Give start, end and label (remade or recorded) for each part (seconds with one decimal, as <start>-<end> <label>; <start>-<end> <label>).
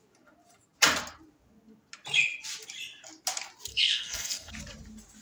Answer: 0.0-3.7 recorded; 3.7-4.5 remade; 4.5-5.2 recorded